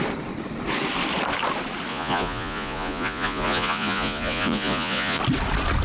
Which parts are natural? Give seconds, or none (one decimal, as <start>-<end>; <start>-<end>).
0.0-1.9; 5.2-5.8